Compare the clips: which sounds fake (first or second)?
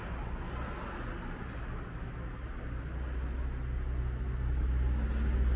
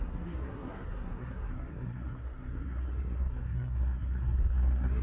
second